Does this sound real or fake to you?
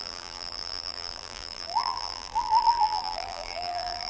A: fake